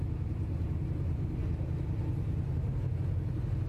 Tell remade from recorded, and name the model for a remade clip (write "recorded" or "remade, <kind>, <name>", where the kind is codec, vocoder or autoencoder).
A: recorded